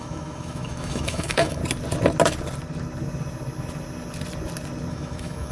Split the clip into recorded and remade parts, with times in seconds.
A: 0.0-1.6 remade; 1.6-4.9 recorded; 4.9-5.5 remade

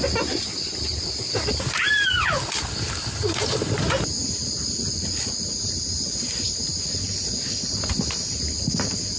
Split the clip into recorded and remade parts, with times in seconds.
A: 0.0-9.2 recorded